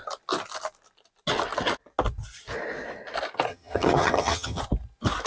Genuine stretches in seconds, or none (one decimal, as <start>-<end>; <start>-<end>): 0.0-3.5; 4.6-5.3